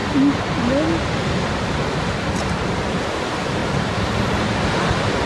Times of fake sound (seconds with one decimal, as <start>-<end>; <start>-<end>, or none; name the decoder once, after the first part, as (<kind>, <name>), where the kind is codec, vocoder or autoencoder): 3.2-3.6 (vocoder, BigVGAN v2)